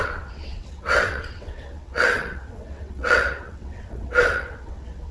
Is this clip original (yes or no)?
no